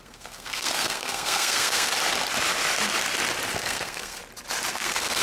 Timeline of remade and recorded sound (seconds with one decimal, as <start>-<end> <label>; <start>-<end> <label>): 0.0-1.9 remade; 1.9-3.5 recorded; 3.5-4.2 remade; 4.2-4.7 recorded; 4.7-5.2 remade